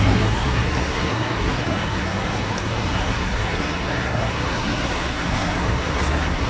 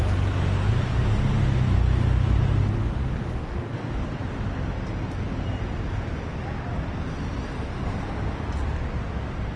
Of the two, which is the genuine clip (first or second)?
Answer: second